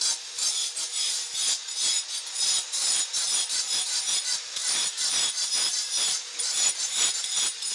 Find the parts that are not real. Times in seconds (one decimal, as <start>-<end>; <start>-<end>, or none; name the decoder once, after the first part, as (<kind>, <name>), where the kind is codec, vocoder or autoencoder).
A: 0.0-1.6 (vocoder, BigVGAN v2); 2.4-7.7